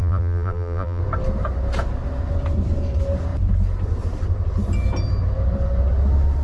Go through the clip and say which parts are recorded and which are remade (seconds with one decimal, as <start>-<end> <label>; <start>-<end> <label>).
0.0-1.0 remade; 1.0-6.4 recorded